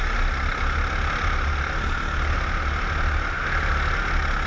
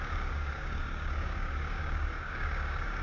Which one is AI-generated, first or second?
second